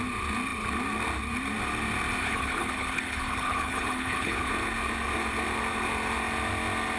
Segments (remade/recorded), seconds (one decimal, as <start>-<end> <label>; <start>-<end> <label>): 0.0-2.2 recorded; 2.2-4.5 remade; 4.5-7.0 recorded